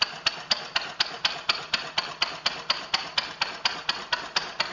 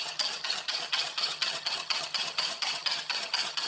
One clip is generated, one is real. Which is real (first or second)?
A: first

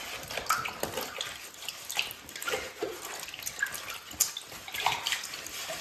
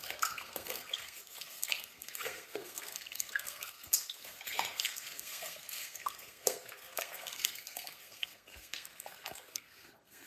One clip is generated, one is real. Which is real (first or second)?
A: first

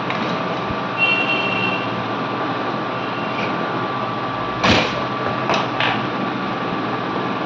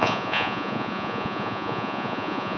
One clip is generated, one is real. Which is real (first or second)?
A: first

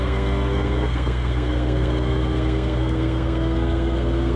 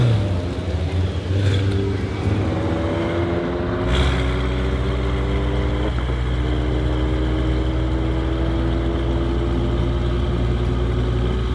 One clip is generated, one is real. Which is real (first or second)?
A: second